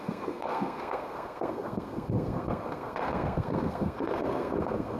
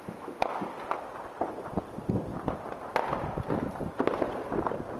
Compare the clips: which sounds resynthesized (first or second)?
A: first